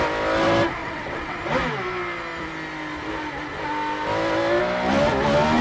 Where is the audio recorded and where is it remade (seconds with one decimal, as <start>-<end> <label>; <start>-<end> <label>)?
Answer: 0.0-0.8 recorded; 0.8-1.4 remade; 1.4-5.6 recorded